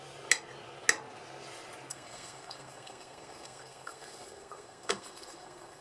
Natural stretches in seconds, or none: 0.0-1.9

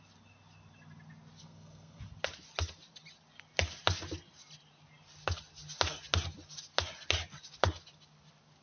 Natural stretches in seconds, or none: 0.0-1.4; 2.0-8.6